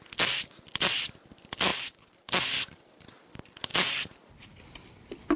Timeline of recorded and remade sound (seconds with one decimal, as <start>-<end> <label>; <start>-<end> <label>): 0.0-5.4 recorded